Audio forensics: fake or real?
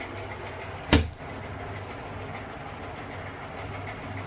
real